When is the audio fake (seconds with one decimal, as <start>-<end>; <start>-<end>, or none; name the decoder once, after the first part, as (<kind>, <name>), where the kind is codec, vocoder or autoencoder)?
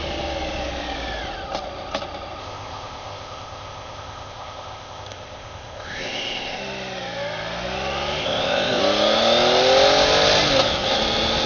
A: 2.4-6.6 (codec, ZipCodec); 8.2-8.8